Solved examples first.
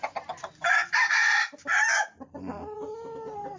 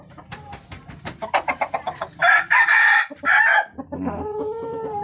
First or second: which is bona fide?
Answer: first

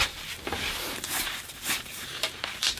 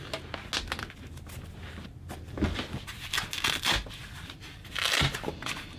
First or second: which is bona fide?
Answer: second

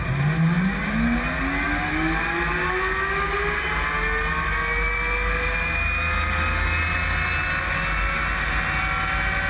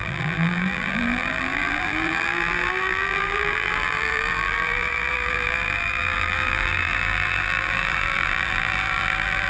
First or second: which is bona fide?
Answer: first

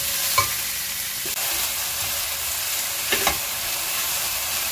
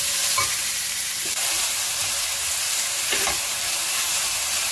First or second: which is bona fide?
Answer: first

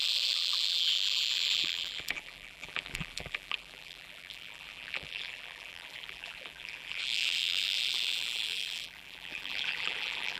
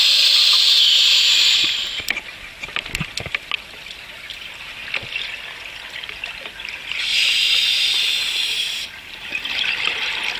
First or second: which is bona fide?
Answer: second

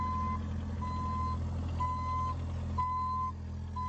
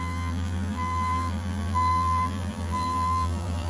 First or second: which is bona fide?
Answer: first